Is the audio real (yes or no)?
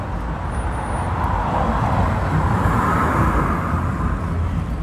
yes